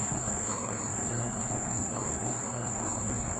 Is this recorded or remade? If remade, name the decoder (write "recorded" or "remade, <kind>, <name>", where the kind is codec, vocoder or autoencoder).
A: remade, codec, SNAC